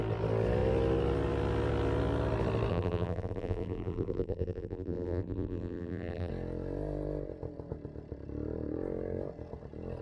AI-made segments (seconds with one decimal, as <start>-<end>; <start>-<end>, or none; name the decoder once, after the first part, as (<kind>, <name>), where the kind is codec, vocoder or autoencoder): 2.7-6.3 (vocoder, BigVGAN v2)